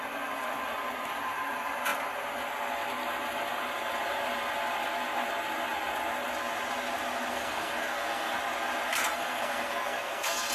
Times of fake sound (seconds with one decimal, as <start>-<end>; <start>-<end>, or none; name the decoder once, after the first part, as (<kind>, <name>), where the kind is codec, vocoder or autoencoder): 7.3-8.4 (codec, SNAC); 8.9-10.5